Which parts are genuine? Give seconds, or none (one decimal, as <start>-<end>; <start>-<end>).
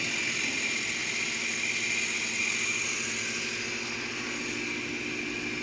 0.0-5.6